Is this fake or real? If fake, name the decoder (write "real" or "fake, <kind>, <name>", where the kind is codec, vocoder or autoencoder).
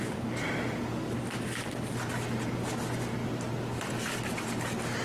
fake, vocoder, BigVGAN v2